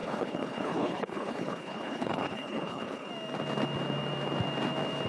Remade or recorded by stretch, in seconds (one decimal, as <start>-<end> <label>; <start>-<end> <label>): 0.0-3.1 remade; 3.1-5.1 recorded